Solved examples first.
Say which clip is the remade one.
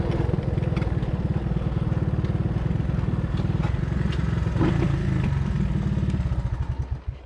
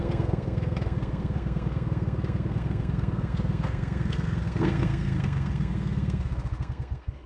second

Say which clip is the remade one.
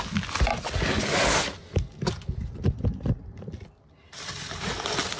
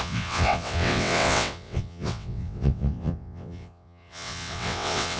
second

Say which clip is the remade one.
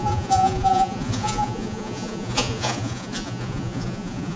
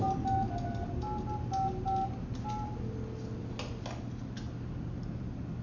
first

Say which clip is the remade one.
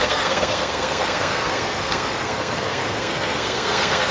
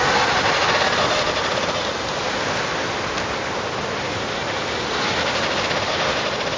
first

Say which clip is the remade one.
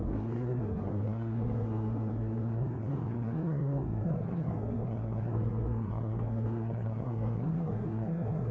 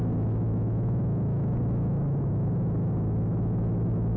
first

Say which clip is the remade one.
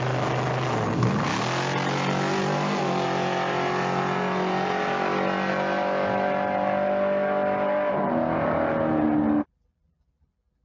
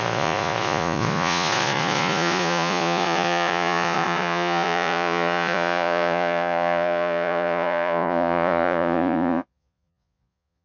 second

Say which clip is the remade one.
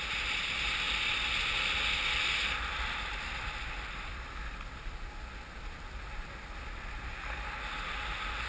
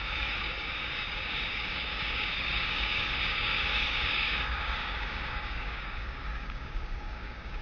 second